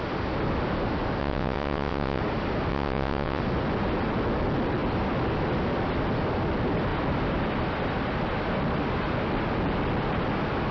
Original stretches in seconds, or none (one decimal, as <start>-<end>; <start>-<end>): 0.0-1.2; 2.2-2.7; 3.4-10.7

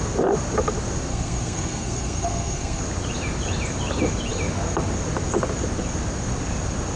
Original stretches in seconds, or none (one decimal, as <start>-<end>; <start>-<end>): 0.0-1.1; 2.8-7.0

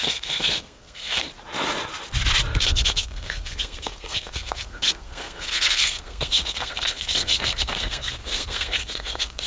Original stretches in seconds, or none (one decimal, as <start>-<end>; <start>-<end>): 1.3-2.6

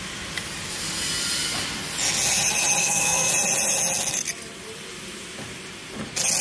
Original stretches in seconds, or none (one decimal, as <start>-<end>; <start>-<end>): 0.0-2.8; 3.3-6.4

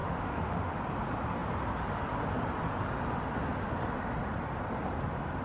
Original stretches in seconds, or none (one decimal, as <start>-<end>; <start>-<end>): 0.8-5.4

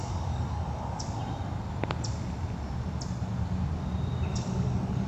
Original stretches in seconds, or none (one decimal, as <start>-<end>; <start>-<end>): 1.2-4.3